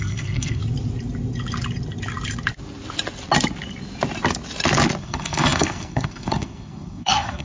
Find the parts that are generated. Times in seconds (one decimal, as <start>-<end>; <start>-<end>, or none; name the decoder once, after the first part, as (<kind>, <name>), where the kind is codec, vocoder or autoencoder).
0.0-0.6 (codec, SNAC); 5.0-7.4